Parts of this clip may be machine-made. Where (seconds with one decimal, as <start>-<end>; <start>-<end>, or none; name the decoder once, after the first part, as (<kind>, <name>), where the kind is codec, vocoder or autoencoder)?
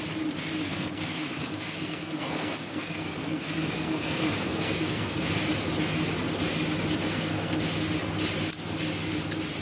0.6-5.3 (codec, SNAC); 7.0-7.6